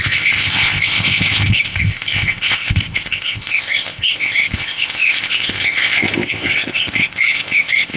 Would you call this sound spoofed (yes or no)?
yes